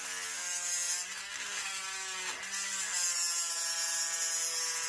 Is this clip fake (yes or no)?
no